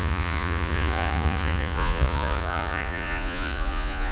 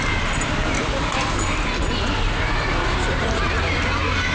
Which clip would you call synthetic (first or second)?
first